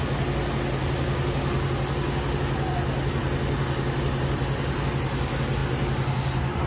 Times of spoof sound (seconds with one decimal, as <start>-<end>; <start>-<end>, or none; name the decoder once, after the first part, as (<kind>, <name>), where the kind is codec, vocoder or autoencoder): none